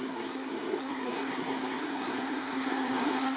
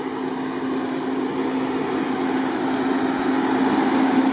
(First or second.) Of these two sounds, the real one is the second